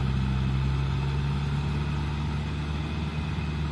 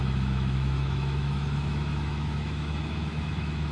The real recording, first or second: first